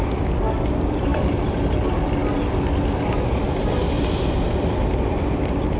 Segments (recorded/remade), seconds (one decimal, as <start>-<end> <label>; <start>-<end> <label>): 0.0-5.8 recorded